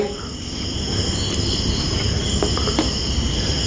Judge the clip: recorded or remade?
recorded